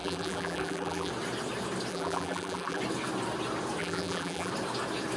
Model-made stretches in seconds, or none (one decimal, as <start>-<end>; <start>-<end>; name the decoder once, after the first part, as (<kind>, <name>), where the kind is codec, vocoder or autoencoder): 0.0-1.1 (vocoder, BigVGAN v2); 1.9-2.8; 3.8-4.5